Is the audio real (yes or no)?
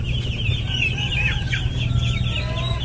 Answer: yes